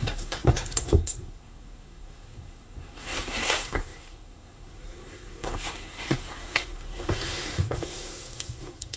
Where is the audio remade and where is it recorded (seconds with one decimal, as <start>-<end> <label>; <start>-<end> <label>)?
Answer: 0.0-9.0 remade